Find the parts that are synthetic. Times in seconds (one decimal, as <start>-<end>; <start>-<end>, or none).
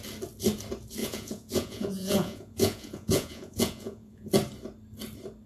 1.0-4.3